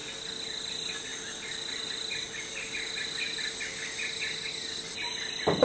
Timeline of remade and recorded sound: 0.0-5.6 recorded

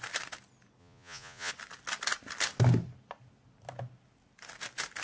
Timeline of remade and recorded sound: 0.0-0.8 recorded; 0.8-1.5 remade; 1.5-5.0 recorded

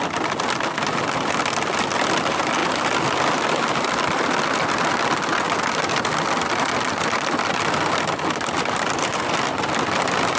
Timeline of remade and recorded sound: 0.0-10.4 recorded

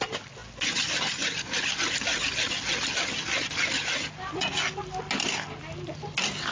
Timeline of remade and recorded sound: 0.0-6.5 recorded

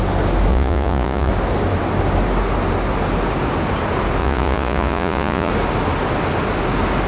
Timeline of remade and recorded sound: 0.0-0.5 recorded; 0.5-1.3 remade; 1.3-4.2 recorded; 4.2-5.5 remade; 5.5-7.1 recorded